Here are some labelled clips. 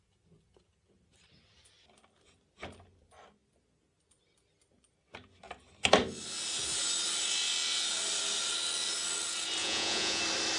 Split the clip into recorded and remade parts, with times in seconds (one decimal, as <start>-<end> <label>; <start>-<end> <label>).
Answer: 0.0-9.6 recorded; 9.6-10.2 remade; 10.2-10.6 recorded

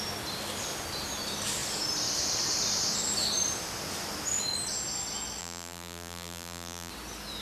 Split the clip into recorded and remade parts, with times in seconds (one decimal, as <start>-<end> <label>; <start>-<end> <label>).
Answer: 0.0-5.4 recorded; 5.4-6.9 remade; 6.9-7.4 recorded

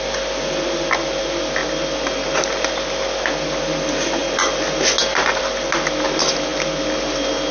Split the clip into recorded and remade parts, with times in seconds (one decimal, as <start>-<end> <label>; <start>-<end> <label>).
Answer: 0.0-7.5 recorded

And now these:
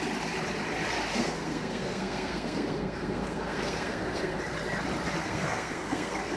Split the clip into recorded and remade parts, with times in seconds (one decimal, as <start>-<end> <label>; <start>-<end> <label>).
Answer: 0.0-1.1 recorded; 1.1-4.4 remade; 4.4-5.2 recorded; 5.2-6.4 remade

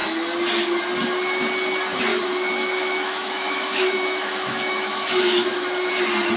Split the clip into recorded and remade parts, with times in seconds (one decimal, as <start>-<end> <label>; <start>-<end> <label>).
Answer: 0.0-2.1 recorded; 2.1-5.9 remade; 5.9-6.4 recorded

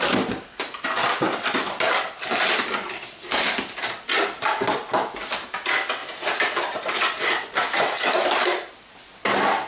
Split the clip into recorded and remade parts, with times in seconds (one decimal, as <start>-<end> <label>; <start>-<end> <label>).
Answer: 0.0-9.7 recorded